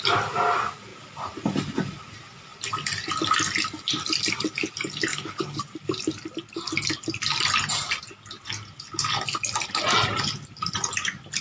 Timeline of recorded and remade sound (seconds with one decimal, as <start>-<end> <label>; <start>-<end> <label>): 0.0-5.1 recorded; 5.1-5.6 remade; 5.6-11.4 recorded